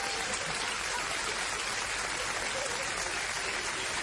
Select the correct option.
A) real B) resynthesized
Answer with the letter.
A